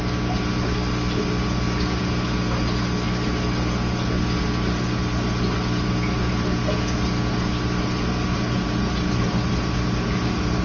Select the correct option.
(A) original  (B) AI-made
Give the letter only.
A